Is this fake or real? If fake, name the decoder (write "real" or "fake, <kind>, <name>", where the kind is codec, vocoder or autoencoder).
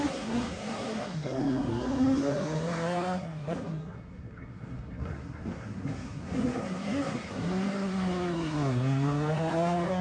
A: fake, codec, SNAC